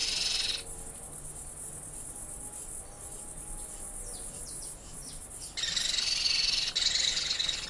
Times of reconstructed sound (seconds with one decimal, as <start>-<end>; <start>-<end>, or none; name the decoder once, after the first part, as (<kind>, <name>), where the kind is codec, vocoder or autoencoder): none